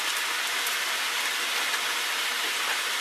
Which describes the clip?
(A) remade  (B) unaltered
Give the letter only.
B